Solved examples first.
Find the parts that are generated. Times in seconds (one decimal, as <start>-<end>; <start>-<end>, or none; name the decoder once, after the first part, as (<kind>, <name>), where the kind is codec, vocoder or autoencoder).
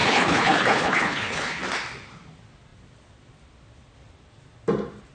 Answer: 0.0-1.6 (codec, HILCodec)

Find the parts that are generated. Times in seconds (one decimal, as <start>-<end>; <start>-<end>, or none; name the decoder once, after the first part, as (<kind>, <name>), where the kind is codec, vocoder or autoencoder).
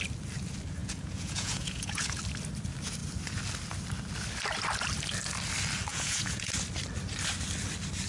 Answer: 0.8-2.2 (vocoder, Vocos); 5.9-6.5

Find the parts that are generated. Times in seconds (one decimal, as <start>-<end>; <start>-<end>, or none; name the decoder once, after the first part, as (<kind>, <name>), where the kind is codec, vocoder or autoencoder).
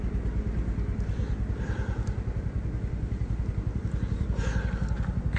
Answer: 1.2-4.4 (vocoder, BigVGAN v2)